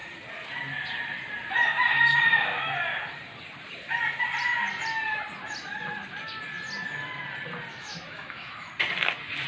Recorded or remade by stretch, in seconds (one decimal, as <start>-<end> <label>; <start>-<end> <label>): 0.0-7.7 recorded; 7.7-8.7 remade; 8.7-9.5 recorded